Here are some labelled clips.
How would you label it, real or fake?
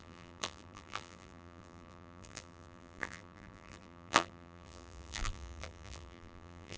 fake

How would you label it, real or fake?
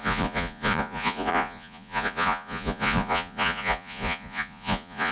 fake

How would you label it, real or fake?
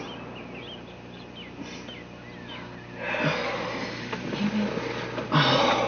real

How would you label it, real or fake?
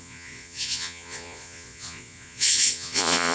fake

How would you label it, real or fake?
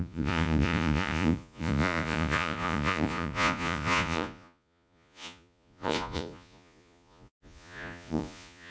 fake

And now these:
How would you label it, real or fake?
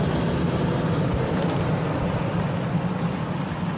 real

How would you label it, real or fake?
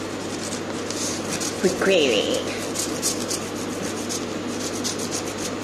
real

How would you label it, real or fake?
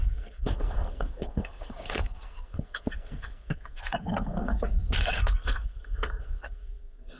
fake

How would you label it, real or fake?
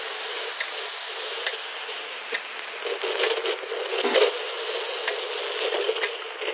real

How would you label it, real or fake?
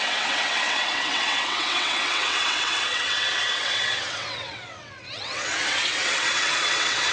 fake